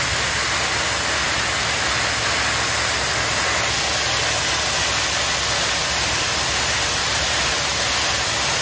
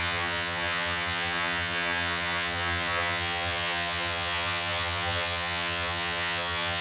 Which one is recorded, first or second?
first